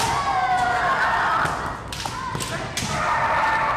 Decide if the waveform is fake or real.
real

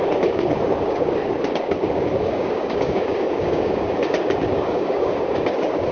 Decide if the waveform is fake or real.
fake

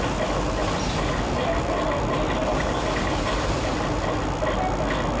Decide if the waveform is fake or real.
real